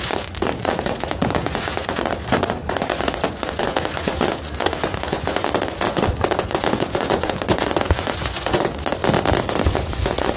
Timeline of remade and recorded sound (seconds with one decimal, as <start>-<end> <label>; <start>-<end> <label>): 0.0-9.0 remade; 9.0-9.6 recorded; 9.6-10.4 remade